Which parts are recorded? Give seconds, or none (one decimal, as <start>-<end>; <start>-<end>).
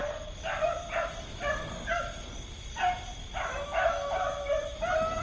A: 0.0-3.2